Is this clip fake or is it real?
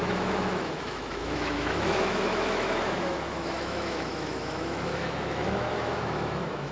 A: fake